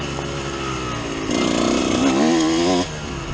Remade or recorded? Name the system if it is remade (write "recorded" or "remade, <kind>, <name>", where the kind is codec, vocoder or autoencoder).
recorded